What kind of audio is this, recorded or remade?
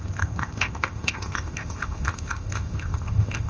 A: remade